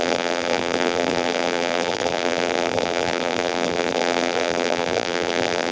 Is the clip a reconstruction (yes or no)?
yes